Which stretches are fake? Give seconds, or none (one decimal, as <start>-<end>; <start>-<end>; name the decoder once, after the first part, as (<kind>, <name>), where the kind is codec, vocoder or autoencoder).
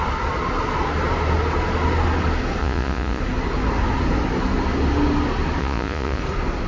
2.6-3.2 (vocoder, Vocos); 5.6-6.2